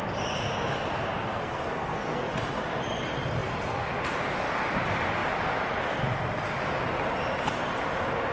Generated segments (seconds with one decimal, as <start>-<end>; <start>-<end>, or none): 1.3-2.3